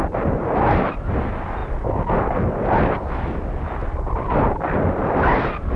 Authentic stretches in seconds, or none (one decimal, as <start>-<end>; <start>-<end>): 0.0-3.8; 5.2-5.8